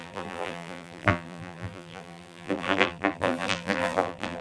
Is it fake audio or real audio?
fake